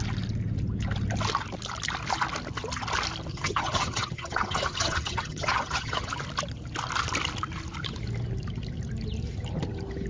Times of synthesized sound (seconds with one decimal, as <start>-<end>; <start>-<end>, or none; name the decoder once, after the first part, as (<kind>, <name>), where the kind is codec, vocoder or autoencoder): 3.3-6.1 (vocoder, HiFi-GAN)